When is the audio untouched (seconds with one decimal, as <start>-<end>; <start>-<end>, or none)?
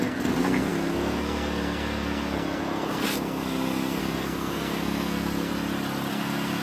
5.5-6.1